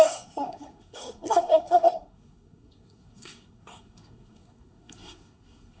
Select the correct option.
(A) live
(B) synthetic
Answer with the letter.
B